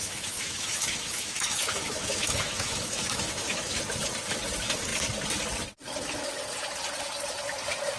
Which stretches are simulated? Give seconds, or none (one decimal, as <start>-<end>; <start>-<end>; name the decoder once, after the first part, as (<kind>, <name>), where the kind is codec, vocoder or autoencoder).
0.0-3.8 (autoencoder, DAC-VAE)